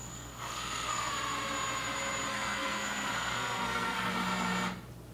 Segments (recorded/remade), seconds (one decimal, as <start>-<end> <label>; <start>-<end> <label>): 0.0-1.1 remade; 1.1-2.3 recorded; 2.3-4.1 remade; 4.1-5.1 recorded

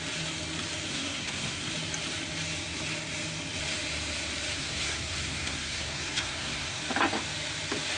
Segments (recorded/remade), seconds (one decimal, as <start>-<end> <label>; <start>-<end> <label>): 0.0-0.9 recorded; 0.9-1.7 remade; 1.7-4.6 recorded; 4.6-6.8 remade; 6.8-8.0 recorded